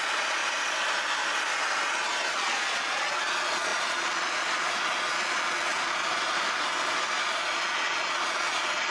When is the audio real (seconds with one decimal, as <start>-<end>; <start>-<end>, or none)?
0.4-2.3; 6.0-7.3